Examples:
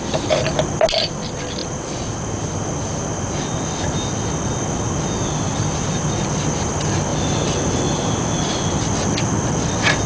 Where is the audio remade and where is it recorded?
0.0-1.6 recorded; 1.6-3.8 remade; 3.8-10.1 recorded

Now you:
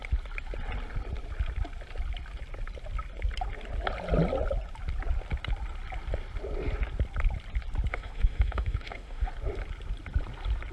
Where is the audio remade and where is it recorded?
0.0-7.9 recorded; 7.9-9.3 remade; 9.3-10.7 recorded

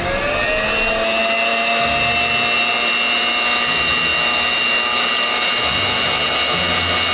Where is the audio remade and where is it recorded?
0.0-7.1 recorded

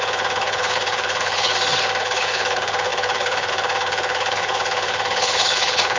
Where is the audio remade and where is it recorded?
0.0-1.5 remade; 1.5-2.0 recorded; 2.0-6.0 remade

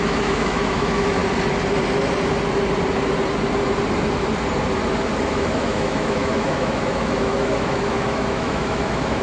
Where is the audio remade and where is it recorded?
0.0-1.2 remade; 1.2-5.3 recorded; 5.3-9.2 remade

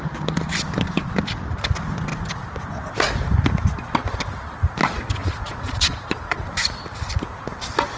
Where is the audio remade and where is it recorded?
0.0-5.2 recorded; 5.2-6.4 remade; 6.4-8.0 recorded

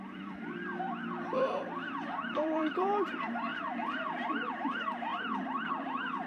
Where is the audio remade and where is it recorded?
0.0-3.5 remade; 3.5-4.5 recorded; 4.5-5.1 remade; 5.1-5.7 recorded; 5.7-6.3 remade

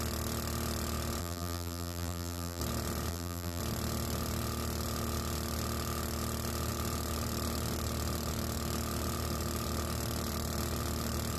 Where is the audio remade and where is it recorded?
0.0-1.2 recorded; 1.2-2.6 remade; 2.6-3.1 recorded; 3.1-3.6 remade; 3.6-11.4 recorded